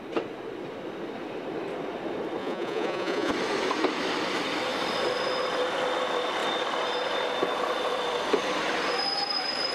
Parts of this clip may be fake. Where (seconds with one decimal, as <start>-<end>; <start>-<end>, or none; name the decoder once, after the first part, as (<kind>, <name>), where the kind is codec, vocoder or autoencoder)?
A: 2.4-3.3 (vocoder, Vocos)